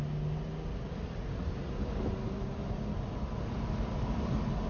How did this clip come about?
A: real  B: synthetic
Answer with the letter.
A